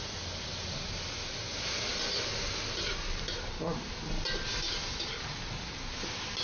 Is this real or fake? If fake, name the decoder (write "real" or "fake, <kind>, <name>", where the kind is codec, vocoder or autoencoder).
real